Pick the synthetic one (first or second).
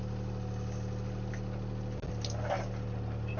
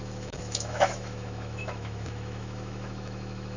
second